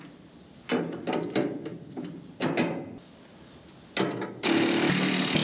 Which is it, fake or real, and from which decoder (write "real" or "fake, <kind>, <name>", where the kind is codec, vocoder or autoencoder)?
real